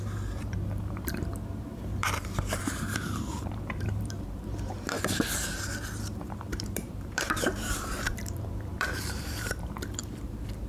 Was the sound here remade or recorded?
remade